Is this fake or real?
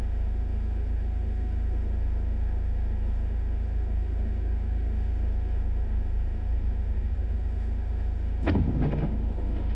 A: fake